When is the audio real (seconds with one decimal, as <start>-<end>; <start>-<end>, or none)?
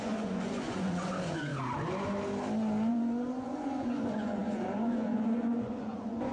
1.5-2.9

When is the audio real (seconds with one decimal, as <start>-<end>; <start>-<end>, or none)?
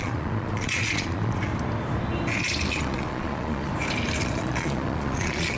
1.5-2.7; 3.7-4.2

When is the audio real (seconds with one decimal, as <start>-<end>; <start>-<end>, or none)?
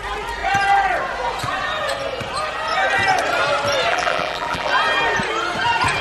0.0-3.9; 4.7-6.0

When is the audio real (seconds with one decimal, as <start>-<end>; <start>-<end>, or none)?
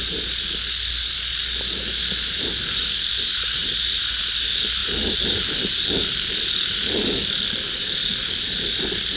0.0-9.2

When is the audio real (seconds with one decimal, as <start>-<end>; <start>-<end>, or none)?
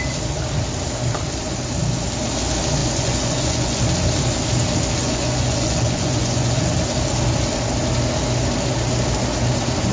0.0-2.8; 3.8-5.0; 6.7-9.9